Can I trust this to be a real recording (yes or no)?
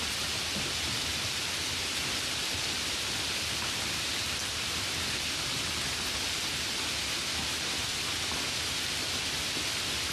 yes